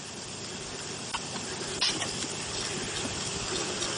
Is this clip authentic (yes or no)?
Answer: yes